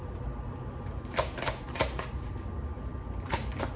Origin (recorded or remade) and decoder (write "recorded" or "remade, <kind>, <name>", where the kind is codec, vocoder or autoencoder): recorded